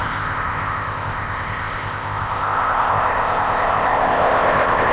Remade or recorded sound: remade